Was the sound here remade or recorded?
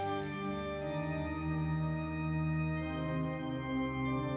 recorded